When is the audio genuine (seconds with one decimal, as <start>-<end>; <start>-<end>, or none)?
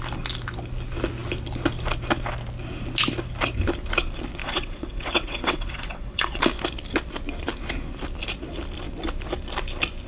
0.0-4.4; 6.4-10.1